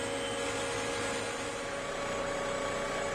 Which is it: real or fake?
real